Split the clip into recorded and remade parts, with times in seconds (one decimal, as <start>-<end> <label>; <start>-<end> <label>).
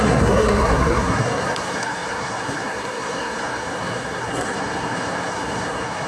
0.0-6.1 remade